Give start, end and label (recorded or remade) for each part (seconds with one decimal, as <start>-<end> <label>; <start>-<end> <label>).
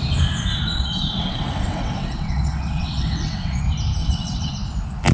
0.0-0.5 recorded; 0.5-3.6 remade; 3.6-4.0 recorded; 4.0-4.5 remade; 4.5-5.1 recorded